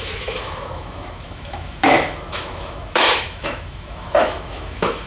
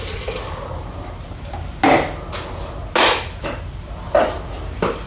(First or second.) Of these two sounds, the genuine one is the second